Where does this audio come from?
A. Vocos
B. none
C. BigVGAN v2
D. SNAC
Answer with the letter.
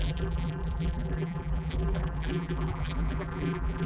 C